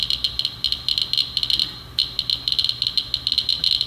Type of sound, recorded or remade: recorded